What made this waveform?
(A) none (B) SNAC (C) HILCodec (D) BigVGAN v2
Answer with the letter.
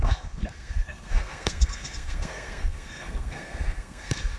B